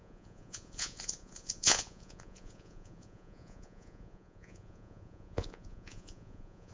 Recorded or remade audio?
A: remade